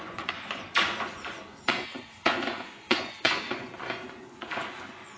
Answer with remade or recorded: remade